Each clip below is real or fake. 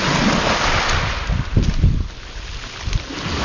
real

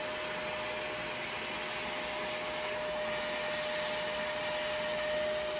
real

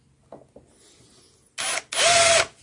real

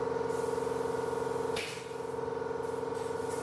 real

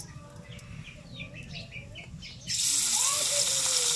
real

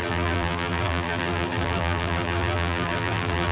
fake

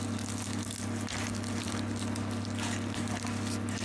real